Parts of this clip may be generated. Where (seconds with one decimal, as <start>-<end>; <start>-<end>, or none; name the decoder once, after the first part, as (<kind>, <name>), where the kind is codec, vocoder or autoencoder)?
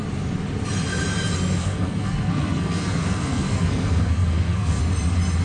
1.6-4.8 (codec, SNAC)